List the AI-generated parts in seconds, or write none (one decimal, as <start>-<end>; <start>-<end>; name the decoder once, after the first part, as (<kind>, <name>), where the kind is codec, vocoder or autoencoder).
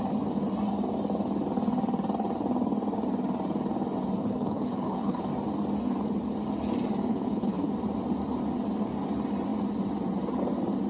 4.2-5.3 (codec, HILCodec); 7.1-7.7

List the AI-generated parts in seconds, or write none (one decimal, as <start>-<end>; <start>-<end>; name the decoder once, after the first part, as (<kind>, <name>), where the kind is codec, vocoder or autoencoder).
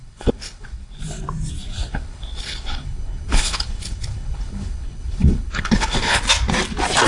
0.0-1.0 (codec, HILCodec); 1.9-6.2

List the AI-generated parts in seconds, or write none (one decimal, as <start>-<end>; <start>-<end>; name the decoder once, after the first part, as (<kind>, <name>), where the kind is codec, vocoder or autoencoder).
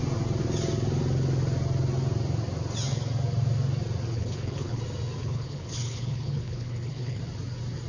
4.1-4.8 (codec, HILCodec); 5.2-7.2